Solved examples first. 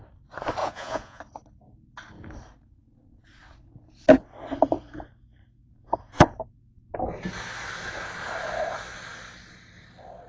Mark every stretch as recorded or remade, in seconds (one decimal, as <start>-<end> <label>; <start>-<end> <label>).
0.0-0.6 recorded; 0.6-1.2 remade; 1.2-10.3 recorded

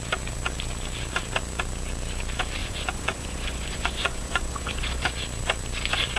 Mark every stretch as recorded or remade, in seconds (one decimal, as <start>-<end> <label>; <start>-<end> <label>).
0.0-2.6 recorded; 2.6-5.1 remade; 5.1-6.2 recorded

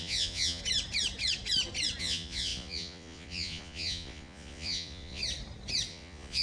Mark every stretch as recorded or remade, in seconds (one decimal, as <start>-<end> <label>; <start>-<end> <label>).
0.0-0.6 remade; 0.6-2.0 recorded; 2.0-5.2 remade; 5.2-5.9 recorded; 5.9-6.4 remade

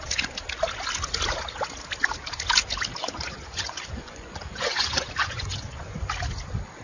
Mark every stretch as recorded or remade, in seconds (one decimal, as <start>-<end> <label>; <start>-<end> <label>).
0.0-3.0 recorded; 3.0-6.0 remade; 6.0-6.8 recorded